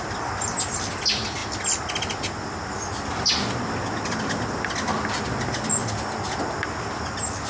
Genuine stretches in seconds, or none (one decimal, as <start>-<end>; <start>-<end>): 0.0-7.5